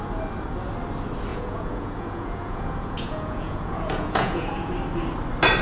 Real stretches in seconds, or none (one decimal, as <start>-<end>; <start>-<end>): 0.0-1.3; 4.7-5.6